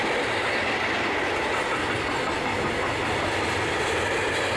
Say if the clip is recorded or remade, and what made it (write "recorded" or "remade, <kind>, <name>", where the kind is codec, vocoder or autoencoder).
recorded